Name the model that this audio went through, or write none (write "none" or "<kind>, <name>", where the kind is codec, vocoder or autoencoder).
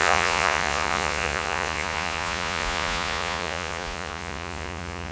vocoder, Vocos